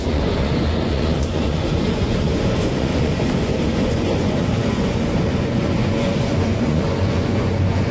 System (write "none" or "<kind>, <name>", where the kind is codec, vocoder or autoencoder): vocoder, Vocos